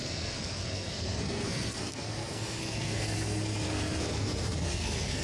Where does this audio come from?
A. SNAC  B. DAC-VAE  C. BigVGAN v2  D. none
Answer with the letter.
A